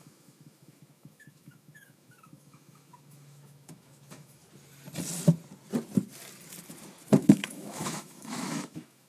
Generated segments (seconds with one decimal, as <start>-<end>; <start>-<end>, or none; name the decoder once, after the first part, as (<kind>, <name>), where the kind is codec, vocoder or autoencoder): 0.0-4.4 (autoencoder, DAC-VAE); 7.2-9.1